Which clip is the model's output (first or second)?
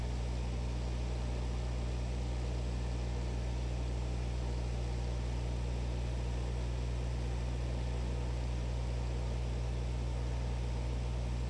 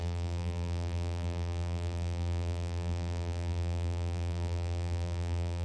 second